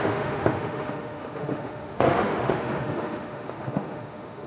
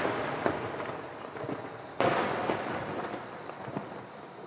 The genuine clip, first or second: second